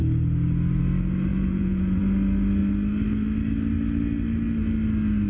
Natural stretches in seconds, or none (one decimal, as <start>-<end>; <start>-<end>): 0.0-1.3; 2.0-5.3